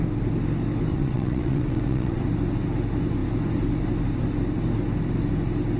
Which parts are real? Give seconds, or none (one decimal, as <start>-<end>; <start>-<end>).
0.0-0.9; 2.2-5.8